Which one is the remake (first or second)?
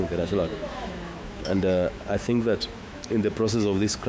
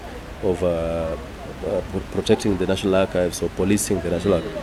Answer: first